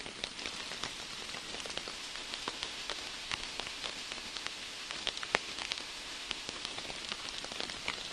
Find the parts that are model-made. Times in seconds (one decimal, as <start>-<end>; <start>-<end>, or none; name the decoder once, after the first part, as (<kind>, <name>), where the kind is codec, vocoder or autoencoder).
1.9-6.7 (autoencoder, DAC-VAE)